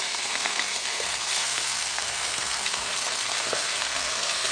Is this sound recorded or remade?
remade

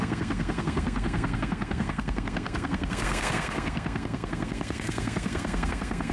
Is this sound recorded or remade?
remade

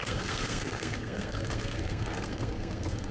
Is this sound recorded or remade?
remade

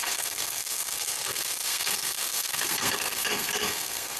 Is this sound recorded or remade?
remade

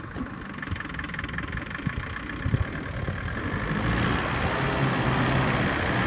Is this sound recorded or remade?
recorded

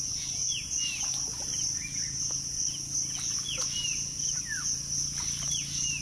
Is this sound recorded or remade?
recorded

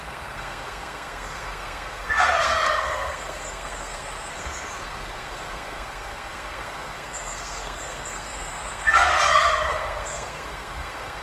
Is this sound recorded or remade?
remade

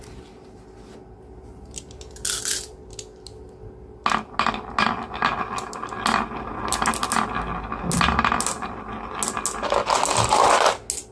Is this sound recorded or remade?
recorded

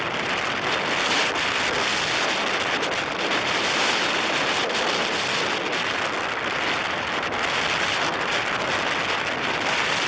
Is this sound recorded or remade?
recorded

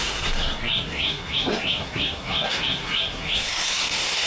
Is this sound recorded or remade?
remade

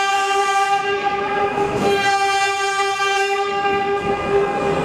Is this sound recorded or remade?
remade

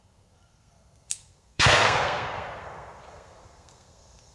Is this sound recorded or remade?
remade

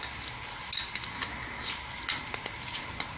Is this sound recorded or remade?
recorded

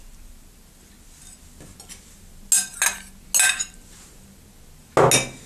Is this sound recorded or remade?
recorded